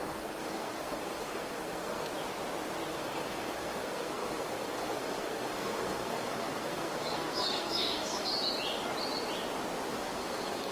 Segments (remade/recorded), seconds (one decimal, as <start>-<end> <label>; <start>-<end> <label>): 0.0-2.1 remade; 2.1-2.9 recorded; 2.9-8.3 remade; 8.3-9.9 recorded; 9.9-10.7 remade